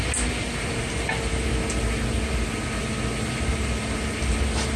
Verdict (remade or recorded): recorded